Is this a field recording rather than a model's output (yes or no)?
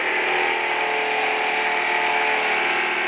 yes